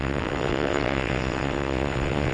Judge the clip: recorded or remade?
remade